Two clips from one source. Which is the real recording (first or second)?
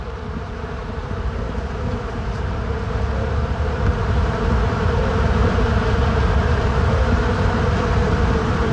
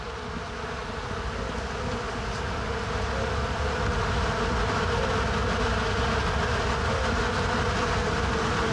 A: second